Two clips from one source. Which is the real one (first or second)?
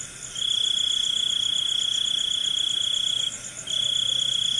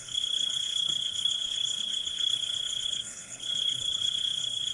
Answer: first